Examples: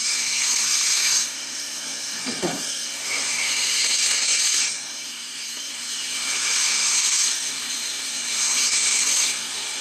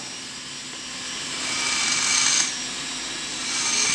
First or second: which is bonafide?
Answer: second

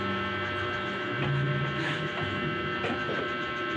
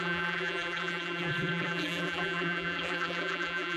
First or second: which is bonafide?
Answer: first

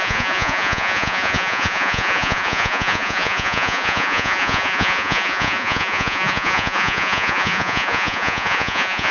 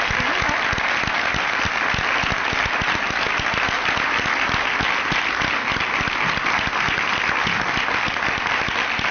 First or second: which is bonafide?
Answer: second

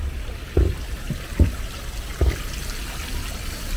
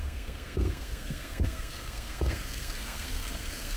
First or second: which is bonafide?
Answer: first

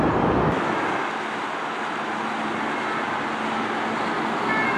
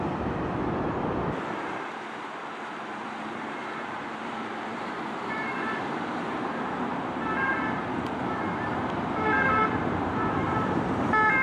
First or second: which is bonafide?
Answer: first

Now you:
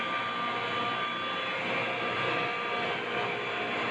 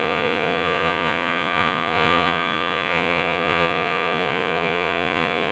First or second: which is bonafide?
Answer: first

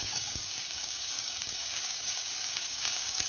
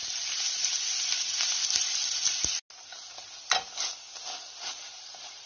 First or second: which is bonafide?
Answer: second